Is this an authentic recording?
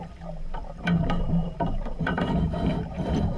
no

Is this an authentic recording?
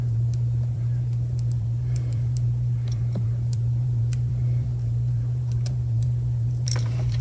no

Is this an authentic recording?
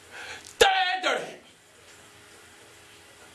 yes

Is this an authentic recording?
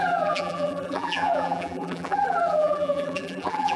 no